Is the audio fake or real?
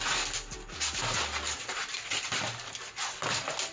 real